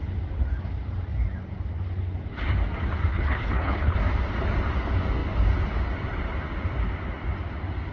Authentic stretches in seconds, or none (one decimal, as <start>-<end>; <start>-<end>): 0.0-3.1; 4.0-7.9